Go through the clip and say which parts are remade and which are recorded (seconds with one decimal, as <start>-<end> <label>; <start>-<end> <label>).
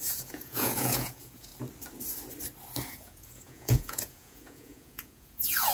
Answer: 0.0-1.5 remade; 1.5-2.9 recorded; 2.9-5.7 remade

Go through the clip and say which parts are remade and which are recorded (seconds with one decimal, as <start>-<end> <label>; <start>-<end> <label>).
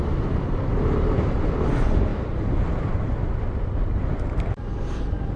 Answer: 0.0-5.4 recorded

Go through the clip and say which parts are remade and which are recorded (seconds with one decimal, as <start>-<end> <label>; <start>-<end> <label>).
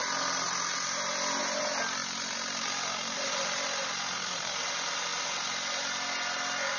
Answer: 0.0-6.8 recorded